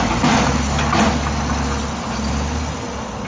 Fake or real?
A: real